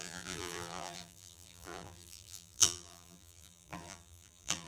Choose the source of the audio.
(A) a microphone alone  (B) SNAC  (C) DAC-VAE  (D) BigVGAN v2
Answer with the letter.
D